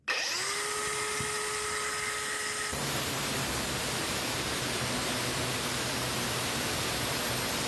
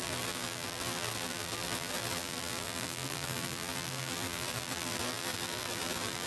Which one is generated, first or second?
second